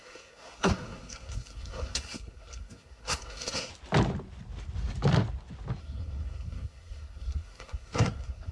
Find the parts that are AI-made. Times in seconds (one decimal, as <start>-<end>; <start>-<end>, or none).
0.0-3.7; 5.8-8.5